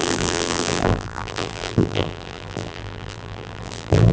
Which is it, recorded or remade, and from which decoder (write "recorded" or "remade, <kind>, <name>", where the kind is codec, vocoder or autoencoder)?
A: remade, vocoder, BigVGAN v2